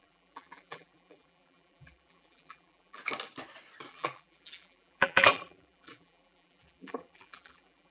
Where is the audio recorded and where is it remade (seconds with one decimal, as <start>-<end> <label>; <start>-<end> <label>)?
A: 0.0-3.0 remade; 3.0-3.9 recorded; 3.9-7.9 remade